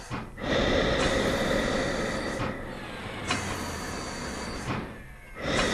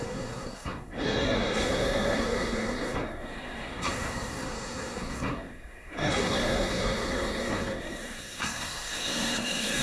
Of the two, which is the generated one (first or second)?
second